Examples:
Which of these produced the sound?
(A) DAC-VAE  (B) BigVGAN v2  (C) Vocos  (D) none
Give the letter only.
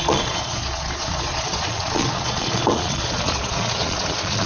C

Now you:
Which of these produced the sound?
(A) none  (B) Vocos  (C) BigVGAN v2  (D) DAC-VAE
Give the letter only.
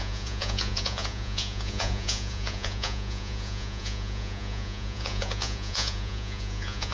B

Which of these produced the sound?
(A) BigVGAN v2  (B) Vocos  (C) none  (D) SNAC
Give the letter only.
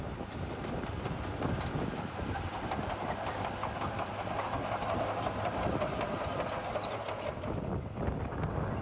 C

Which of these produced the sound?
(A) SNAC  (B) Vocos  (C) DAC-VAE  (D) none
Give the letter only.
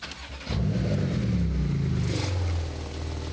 D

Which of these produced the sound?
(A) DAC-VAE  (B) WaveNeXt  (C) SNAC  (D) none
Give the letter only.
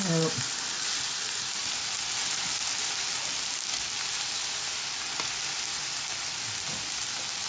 D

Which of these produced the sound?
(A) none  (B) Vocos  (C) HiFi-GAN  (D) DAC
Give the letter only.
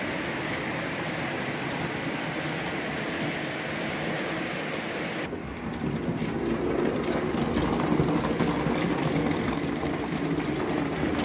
A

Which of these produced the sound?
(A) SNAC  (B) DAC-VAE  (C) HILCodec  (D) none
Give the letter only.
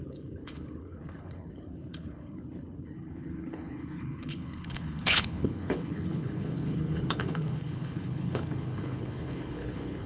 C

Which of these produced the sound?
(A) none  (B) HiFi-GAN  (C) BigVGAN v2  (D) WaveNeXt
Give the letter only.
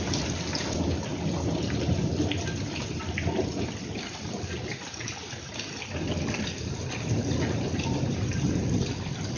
A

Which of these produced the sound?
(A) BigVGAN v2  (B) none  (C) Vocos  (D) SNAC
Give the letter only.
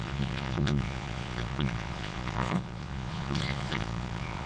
C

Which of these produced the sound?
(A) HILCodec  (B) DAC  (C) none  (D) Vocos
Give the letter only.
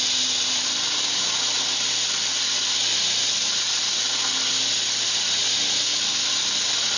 C